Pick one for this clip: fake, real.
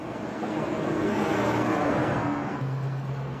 fake